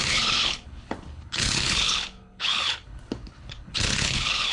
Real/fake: fake